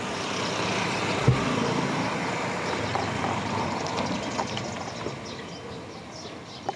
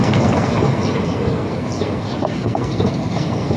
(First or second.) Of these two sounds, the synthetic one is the second